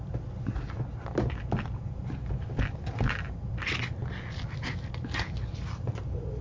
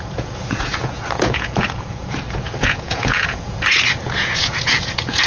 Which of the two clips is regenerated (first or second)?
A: second